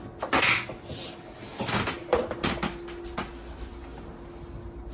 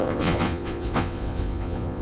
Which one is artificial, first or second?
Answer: second